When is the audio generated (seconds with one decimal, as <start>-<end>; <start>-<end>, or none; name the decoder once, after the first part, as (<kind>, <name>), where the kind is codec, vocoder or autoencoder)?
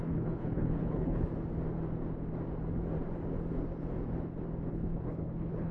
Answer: 0.0-1.3 (codec, HILCodec); 4.7-5.7